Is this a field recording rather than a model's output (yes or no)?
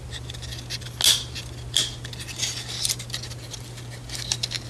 yes